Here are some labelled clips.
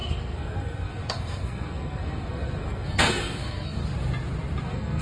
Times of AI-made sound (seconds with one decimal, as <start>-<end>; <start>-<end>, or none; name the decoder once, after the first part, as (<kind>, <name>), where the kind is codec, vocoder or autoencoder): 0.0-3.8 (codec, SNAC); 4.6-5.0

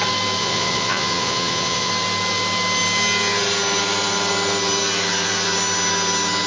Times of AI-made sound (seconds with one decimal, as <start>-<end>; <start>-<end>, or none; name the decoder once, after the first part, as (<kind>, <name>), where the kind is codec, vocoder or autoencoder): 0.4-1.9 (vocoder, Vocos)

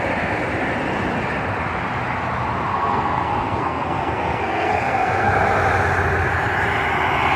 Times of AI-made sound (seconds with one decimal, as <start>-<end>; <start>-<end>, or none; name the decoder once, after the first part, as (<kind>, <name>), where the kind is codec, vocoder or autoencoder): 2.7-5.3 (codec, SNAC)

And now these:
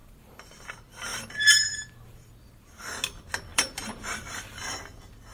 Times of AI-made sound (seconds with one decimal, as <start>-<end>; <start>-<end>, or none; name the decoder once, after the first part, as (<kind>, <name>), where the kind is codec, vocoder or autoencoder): 0.0-0.7 (vocoder, BigVGAN v2); 1.1-2.7; 3.5-4.8

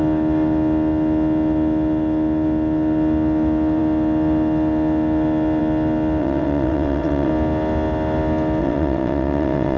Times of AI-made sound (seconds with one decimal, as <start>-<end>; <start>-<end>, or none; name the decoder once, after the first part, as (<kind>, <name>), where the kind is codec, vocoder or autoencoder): 6.2-7.3 (vocoder, WaveNeXt); 8.6-9.8